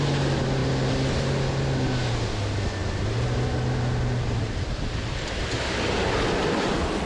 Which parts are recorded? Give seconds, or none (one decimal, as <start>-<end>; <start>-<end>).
0.0-7.1